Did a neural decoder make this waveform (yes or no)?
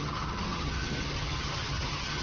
yes